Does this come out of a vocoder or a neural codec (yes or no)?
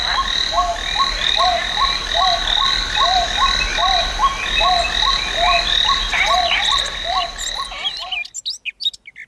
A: no